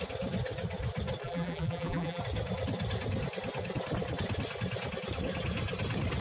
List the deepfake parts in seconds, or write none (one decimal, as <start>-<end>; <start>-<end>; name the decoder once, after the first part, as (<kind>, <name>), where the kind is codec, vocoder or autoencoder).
1.2-2.2 (vocoder, BigVGAN v2)